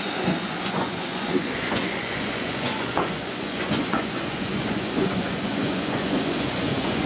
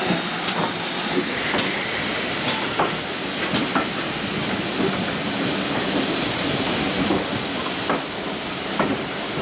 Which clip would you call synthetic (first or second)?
first